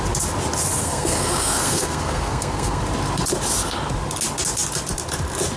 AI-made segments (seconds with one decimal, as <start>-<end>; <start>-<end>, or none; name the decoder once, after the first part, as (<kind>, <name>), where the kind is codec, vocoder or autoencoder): 0.8-2.8 (codec, SNAC)